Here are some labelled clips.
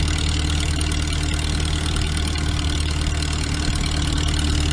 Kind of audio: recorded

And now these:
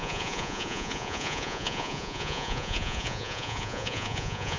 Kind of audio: remade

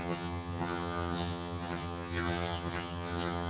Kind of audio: remade